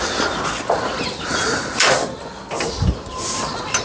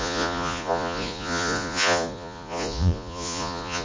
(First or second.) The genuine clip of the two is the first